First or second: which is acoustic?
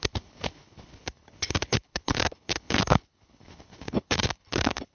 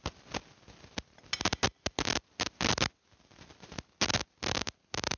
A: second